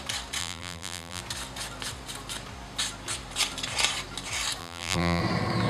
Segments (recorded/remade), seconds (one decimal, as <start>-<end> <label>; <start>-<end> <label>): 0.0-0.4 recorded; 0.4-1.2 remade; 1.2-4.6 recorded; 4.6-5.2 remade; 5.2-5.7 recorded